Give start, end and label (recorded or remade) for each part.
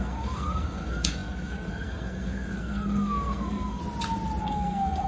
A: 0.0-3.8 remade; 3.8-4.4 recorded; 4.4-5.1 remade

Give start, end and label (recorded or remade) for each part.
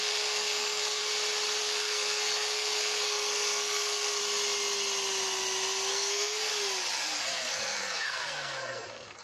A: 0.0-1.0 remade; 1.0-1.6 recorded; 1.6-4.2 remade; 4.2-5.9 recorded; 5.9-6.5 remade; 6.5-7.2 recorded; 7.2-9.2 remade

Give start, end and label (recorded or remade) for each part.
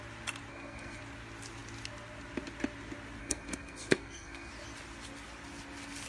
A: 0.0-0.5 recorded; 0.5-1.0 remade; 1.0-3.2 recorded; 3.2-4.5 remade; 4.5-6.1 recorded